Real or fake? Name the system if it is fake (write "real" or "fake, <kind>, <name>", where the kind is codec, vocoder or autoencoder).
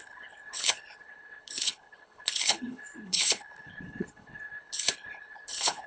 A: fake, codec, HILCodec